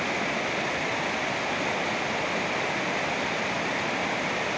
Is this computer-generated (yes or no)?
no